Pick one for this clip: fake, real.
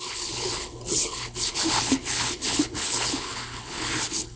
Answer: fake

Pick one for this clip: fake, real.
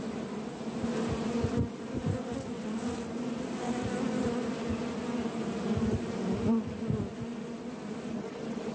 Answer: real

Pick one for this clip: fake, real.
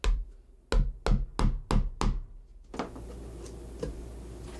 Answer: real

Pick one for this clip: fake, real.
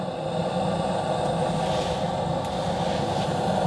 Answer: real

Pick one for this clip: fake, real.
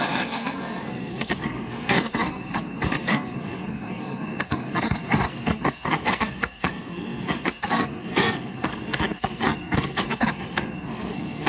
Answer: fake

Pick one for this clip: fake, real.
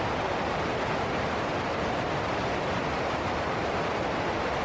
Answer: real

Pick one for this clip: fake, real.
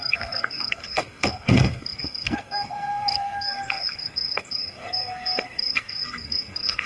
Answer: fake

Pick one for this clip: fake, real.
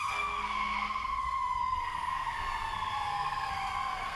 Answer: fake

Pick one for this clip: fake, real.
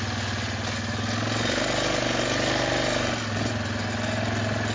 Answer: real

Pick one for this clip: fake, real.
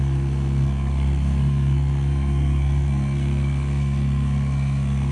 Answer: fake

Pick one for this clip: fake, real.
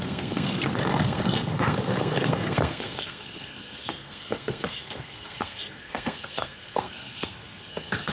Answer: fake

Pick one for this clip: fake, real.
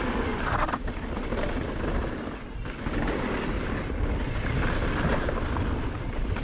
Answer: real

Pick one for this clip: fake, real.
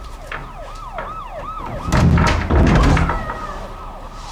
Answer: real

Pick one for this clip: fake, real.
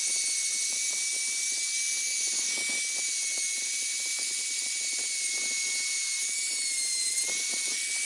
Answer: real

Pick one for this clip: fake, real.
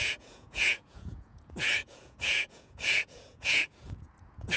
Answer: fake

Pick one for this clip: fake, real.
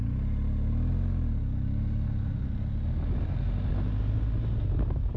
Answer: real